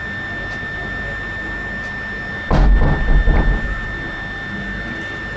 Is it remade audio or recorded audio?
recorded